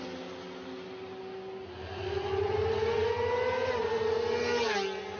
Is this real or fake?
real